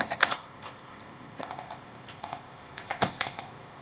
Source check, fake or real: fake